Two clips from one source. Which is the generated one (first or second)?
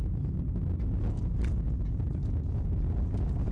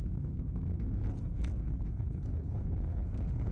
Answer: second